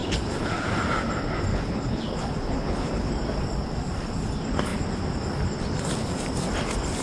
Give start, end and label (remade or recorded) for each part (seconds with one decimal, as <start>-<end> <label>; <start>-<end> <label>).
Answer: 0.0-0.6 remade; 0.6-1.5 recorded; 1.5-3.1 remade; 3.1-7.0 recorded